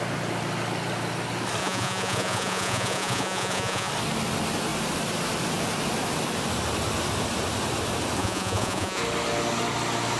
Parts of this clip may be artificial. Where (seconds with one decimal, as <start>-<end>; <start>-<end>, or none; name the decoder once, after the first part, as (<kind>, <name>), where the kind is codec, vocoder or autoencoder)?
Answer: 1.6-3.9 (vocoder, Vocos); 8.2-9.0